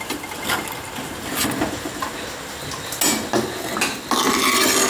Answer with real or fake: real